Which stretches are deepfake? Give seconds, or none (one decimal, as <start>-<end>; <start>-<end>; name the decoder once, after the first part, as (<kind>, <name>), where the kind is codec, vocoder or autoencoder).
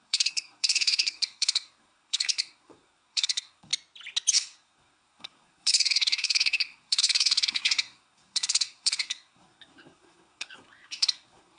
0.0-3.7 (codec, SNAC); 4.3-11.6